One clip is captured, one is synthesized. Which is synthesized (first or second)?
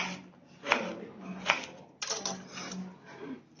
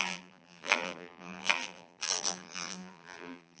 second